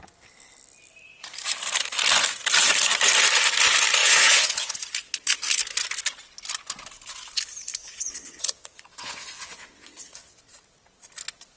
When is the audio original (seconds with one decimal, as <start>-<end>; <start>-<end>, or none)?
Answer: 0.0-4.0; 4.8-7.8; 10.4-11.6